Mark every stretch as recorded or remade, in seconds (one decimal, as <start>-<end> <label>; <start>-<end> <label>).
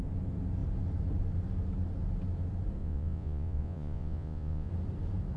0.0-2.8 recorded; 2.8-4.7 remade; 4.7-5.4 recorded